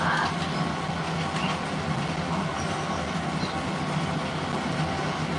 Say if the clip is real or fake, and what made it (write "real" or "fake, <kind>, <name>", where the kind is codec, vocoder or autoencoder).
real